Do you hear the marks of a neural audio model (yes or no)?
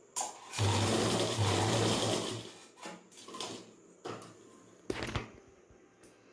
no